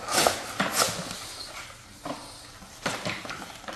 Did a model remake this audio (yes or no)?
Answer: no